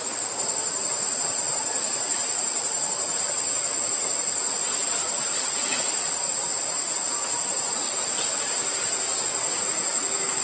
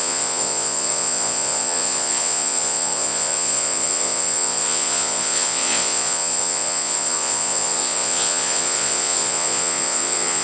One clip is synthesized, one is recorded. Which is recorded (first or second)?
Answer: first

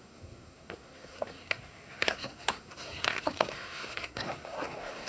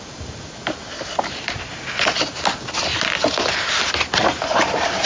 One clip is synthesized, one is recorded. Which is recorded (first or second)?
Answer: second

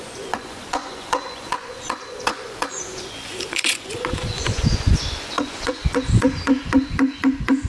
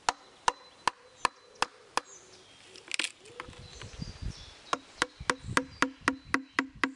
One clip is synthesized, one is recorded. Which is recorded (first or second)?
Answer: second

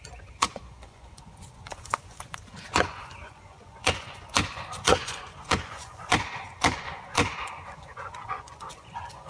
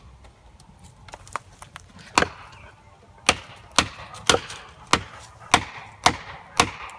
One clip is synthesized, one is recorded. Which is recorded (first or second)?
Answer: second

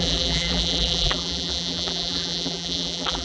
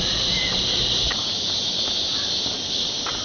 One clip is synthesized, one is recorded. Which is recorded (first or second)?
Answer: second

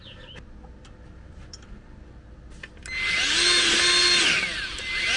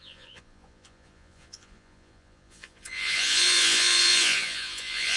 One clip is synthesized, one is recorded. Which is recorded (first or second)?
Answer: first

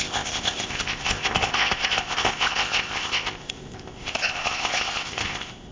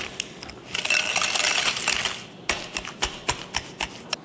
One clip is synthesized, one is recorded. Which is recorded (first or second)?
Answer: second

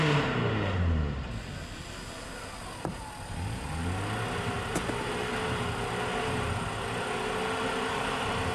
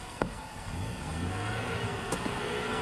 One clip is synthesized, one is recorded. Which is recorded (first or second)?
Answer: first